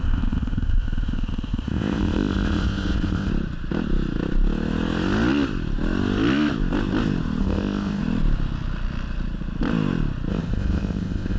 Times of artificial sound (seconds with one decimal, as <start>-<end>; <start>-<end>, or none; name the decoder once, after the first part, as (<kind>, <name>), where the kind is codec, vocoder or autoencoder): 0.0-3.3 (codec, ZipCodec); 7.4-8.0; 10.3-11.4